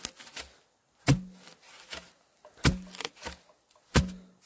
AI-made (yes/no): no